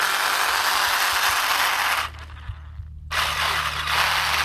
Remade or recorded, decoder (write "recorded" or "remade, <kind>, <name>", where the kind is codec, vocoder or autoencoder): recorded